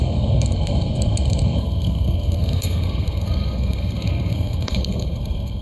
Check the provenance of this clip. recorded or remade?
remade